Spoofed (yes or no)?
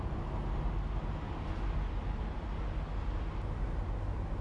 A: no